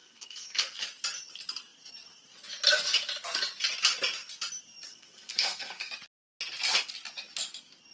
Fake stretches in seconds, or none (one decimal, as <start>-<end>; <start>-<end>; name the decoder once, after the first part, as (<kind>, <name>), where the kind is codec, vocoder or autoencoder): 0.0-0.6 (codec, SNAC); 4.9-5.9